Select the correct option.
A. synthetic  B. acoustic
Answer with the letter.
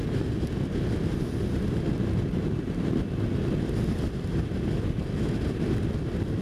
B